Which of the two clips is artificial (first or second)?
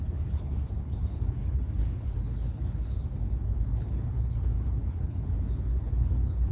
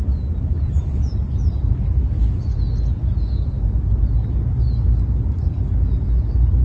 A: first